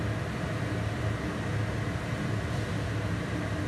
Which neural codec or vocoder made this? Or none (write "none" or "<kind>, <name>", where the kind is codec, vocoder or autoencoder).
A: none